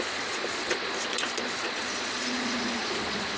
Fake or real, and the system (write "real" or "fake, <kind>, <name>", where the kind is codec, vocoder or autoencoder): fake, vocoder, Vocos